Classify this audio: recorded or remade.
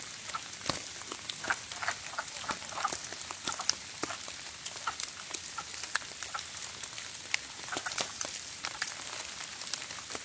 recorded